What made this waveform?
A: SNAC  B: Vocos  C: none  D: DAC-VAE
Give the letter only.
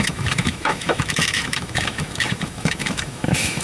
D